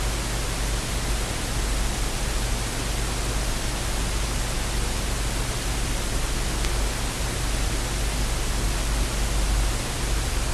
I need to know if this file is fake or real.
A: real